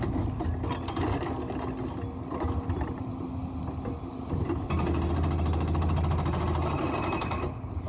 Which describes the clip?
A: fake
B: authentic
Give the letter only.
B